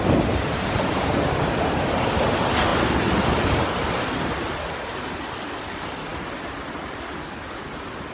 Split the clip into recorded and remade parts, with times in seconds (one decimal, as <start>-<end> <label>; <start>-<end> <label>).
0.0-8.1 recorded